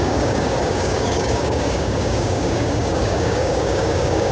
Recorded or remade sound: remade